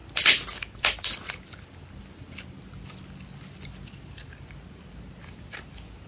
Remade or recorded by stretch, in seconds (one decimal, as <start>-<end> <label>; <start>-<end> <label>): 0.0-6.1 recorded